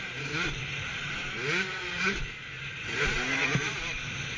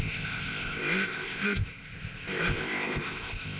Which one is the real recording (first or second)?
first